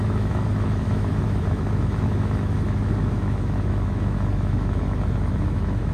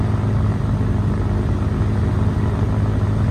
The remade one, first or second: first